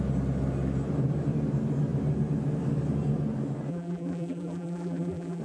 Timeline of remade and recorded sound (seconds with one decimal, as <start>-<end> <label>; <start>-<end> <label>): 0.0-3.7 recorded; 3.7-5.4 remade

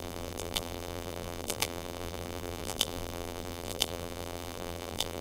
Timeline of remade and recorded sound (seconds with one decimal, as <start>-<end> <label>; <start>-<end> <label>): 0.0-5.2 remade

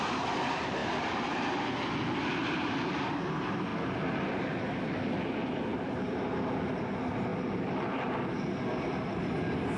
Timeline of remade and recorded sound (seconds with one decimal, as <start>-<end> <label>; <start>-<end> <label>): 0.0-0.8 recorded; 0.8-1.3 remade; 1.3-5.7 recorded; 5.7-6.3 remade; 6.3-7.3 recorded; 7.3-9.8 remade

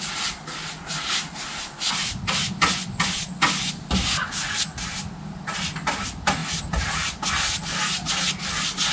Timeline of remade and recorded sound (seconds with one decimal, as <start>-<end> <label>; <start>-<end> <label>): 0.0-8.9 recorded

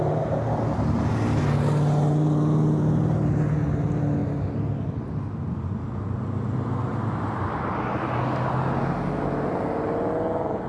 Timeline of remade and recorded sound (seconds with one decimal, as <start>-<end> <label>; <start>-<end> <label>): 0.0-6.9 recorded; 6.9-8.0 remade; 8.0-10.7 recorded

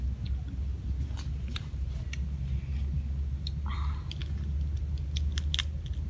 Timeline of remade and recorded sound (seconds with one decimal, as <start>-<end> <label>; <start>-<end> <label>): 0.0-0.7 recorded; 0.7-2.0 remade; 2.0-6.1 recorded

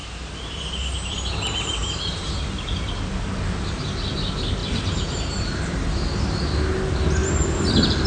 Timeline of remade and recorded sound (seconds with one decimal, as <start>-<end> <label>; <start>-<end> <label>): 0.0-1.3 remade; 1.3-1.8 recorded; 1.8-2.3 remade; 2.3-4.6 recorded; 4.6-5.8 remade; 5.8-7.2 recorded; 7.2-8.1 remade